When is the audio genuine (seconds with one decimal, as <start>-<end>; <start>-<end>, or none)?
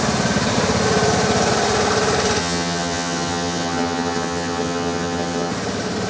0.0-2.4; 5.5-6.1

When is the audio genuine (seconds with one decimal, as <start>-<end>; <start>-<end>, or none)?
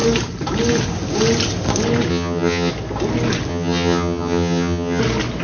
0.0-2.1; 2.7-3.5; 5.0-5.4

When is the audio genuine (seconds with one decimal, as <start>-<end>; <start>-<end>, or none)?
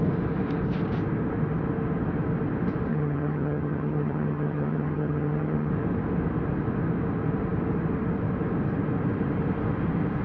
0.0-2.9; 5.7-10.2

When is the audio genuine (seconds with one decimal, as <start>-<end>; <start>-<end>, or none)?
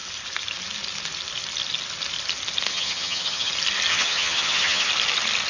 0.0-2.7; 3.5-3.9; 4.9-5.5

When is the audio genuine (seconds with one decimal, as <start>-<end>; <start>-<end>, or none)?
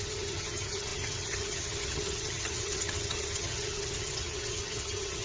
none